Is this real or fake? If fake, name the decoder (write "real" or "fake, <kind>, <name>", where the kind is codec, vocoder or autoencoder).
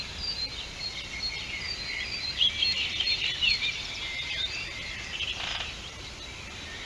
real